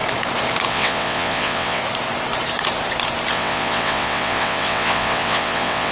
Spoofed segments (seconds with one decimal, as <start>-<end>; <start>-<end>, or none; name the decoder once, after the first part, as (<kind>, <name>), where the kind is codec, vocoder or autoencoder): 0.7-1.8 (vocoder, WaveNeXt); 3.3-5.9